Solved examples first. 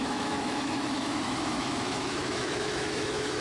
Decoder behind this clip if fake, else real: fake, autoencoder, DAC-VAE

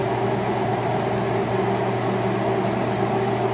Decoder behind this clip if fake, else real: real